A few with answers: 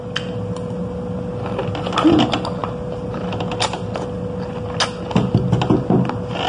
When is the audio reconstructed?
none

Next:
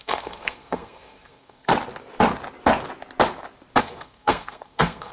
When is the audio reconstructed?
0.0-1.7 (codec, SNAC); 3.8-5.1

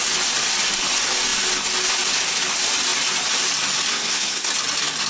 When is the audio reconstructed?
3.9-4.5 (codec, SNAC)

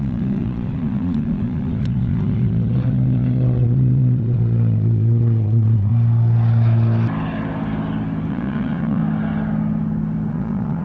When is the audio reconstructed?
0.0-5.9 (vocoder, Vocos); 8.3-9.0; 10.3-10.8

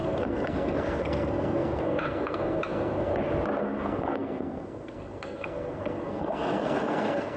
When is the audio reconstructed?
0.0-3.1 (codec, SNAC); 3.6-7.4